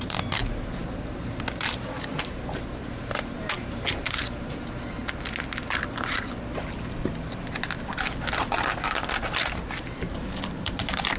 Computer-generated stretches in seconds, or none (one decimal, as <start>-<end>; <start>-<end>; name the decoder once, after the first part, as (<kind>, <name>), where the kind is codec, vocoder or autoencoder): 0.0-5.0 (vocoder, BigVGAN v2); 9.8-11.2

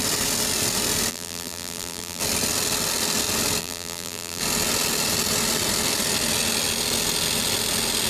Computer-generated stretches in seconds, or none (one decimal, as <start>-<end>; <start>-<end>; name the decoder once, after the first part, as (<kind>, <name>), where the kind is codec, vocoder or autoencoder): 1.1-2.2 (vocoder, BigVGAN v2); 3.6-4.4

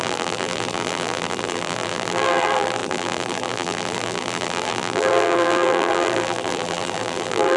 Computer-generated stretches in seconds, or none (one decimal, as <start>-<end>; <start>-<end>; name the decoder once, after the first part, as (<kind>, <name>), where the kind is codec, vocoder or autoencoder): 0.0-7.6 (vocoder, BigVGAN v2)

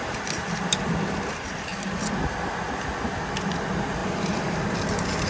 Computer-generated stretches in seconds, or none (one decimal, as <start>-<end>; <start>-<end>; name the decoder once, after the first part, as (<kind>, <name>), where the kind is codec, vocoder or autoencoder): 0.0-1.7 (vocoder, BigVGAN v2); 3.3-5.3

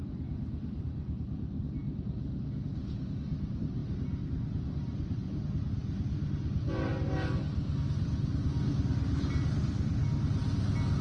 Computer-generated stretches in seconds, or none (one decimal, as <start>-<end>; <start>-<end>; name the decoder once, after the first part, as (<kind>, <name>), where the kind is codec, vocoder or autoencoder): none

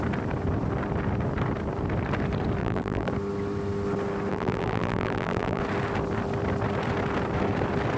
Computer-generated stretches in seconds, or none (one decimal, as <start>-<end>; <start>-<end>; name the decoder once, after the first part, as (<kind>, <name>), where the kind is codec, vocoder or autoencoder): 2.6-3.1 (vocoder, BigVGAN v2); 4.3-5.6

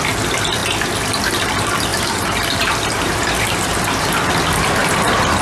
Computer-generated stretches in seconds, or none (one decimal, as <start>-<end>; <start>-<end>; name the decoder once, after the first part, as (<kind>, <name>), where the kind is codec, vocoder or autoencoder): 1.9-4.3 (vocoder, BigVGAN v2); 4.8-5.4

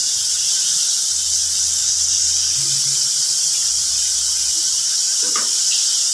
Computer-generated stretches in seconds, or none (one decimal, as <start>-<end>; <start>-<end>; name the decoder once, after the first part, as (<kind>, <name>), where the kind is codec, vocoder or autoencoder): none